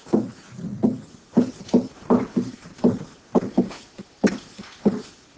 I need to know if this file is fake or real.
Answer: real